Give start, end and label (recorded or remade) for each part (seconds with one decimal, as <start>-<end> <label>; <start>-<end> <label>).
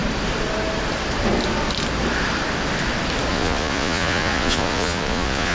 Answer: 0.0-3.3 recorded; 3.3-5.5 remade